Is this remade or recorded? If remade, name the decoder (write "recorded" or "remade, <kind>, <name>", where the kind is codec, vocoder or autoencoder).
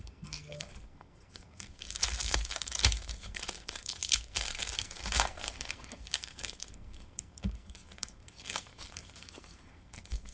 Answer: remade, codec, SNAC